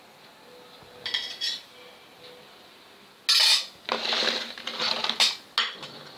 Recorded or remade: recorded